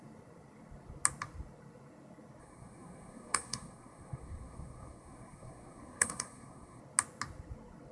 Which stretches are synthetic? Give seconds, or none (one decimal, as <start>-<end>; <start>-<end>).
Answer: 2.4-6.8